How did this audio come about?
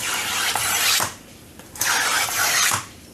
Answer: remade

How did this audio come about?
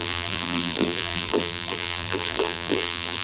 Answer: remade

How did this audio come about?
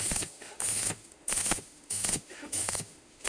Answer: remade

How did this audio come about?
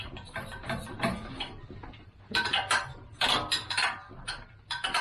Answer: recorded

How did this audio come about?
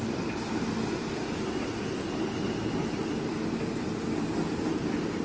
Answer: recorded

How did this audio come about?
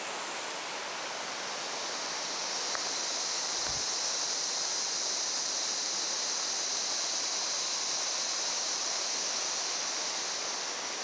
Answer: recorded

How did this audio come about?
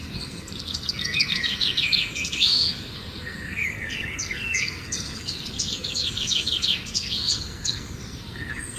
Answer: remade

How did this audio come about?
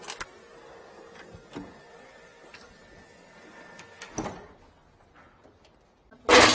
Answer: recorded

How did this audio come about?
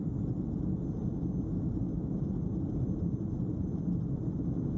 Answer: remade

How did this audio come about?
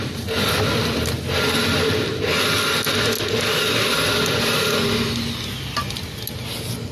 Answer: recorded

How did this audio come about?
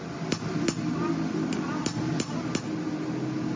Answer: recorded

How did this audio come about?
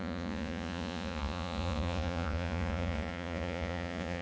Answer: remade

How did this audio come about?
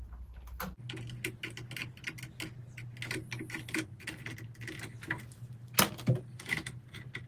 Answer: recorded